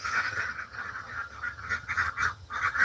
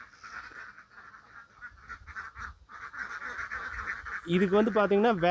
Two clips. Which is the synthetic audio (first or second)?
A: first